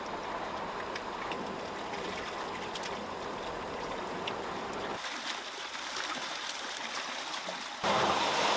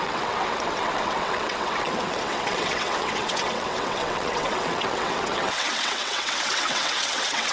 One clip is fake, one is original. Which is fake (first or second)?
second